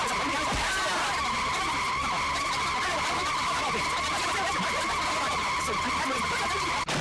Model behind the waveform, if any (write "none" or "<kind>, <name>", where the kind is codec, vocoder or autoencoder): none